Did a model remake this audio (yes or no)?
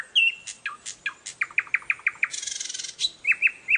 no